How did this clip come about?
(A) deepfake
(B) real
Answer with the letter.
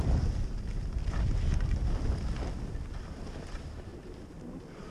B